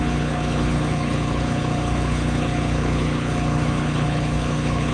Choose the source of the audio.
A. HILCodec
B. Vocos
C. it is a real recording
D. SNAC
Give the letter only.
A